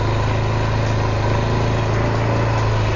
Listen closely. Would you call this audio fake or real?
real